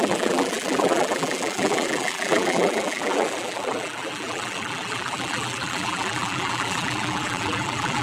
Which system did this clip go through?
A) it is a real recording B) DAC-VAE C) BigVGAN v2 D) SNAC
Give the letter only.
C